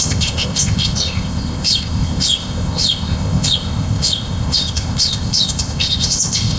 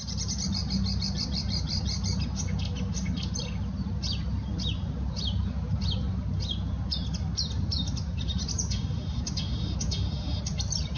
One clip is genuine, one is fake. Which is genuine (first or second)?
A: second